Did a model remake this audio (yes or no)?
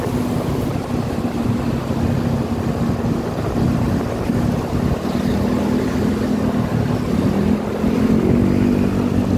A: no